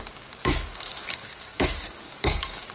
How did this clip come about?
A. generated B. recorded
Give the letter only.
A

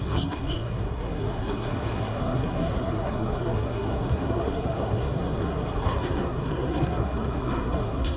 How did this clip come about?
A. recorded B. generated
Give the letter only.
B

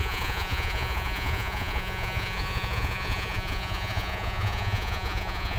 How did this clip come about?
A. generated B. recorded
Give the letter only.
A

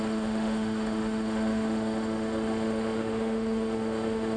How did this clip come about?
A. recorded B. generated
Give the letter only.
B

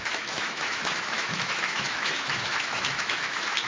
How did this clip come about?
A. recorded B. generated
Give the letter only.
B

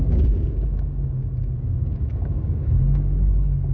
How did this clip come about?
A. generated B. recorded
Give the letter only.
A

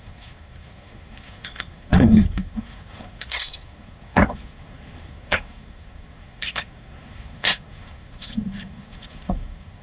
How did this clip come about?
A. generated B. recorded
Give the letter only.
A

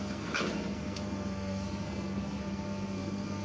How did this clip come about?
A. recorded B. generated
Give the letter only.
B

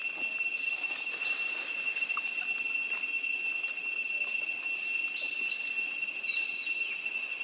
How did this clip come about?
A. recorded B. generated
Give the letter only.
A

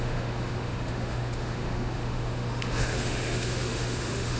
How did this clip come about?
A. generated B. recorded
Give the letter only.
A